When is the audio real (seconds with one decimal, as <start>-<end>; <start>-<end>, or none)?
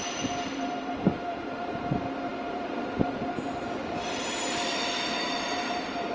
0.0-0.5; 1.8-2.3